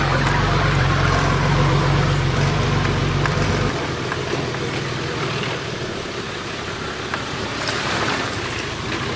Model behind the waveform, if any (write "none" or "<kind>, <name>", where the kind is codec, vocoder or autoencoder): vocoder, BigVGAN v2